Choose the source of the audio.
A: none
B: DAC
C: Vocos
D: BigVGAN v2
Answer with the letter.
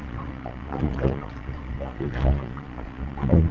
C